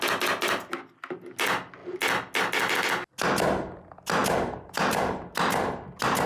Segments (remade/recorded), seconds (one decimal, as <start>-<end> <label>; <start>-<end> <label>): 0.0-4.2 recorded; 4.2-5.3 remade; 5.3-6.3 recorded